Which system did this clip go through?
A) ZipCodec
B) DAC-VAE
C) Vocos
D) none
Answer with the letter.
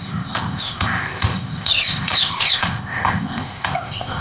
A